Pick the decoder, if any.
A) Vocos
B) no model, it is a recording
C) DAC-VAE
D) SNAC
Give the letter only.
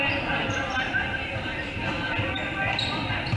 B